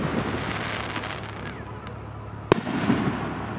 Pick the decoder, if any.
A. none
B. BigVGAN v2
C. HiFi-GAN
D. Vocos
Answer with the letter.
A